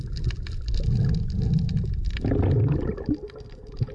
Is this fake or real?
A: real